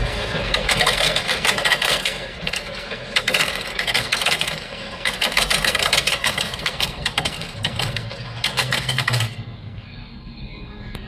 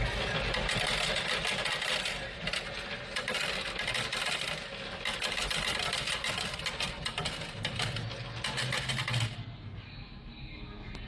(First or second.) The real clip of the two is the second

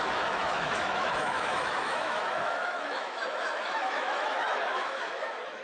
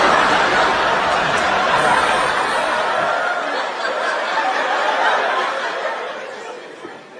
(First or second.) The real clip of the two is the second